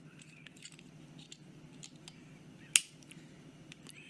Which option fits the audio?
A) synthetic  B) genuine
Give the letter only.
B